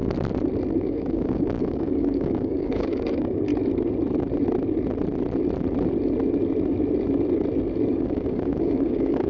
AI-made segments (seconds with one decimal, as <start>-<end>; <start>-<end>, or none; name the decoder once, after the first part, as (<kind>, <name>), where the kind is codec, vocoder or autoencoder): 0.8-3.5 (codec, DAC); 7.9-9.3